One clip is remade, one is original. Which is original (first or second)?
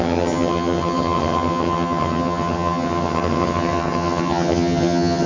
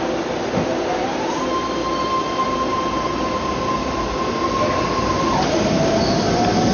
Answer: second